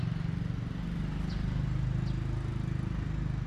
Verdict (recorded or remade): recorded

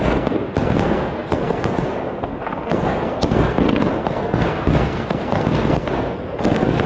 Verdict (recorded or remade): remade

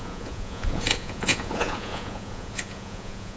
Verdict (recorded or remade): remade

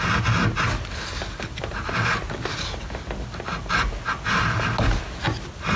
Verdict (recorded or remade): recorded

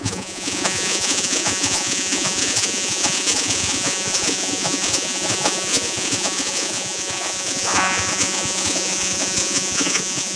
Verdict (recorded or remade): remade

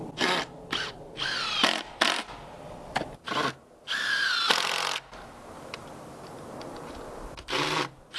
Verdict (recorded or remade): recorded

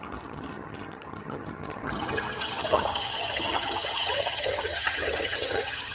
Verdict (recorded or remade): remade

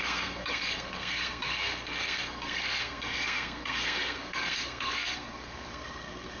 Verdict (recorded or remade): remade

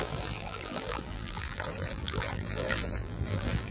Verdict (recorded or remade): remade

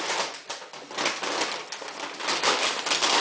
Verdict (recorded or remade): recorded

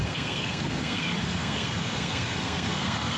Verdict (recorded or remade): remade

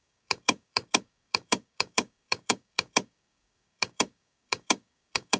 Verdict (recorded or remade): remade